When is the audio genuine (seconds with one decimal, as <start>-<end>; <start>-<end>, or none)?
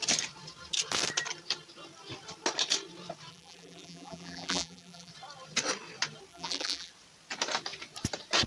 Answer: 0.0-3.3; 5.1-6.3; 6.9-8.5